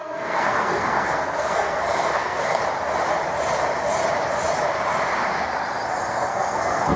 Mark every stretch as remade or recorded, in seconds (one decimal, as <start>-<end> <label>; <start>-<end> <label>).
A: 0.0-2.6 remade; 2.6-6.1 recorded; 6.1-7.0 remade